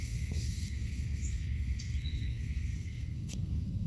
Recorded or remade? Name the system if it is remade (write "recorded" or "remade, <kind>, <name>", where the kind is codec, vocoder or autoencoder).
remade, codec, SNAC